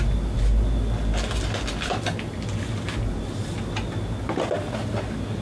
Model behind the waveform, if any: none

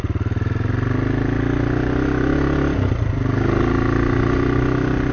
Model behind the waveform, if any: none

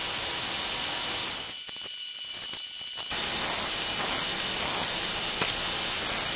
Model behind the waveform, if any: none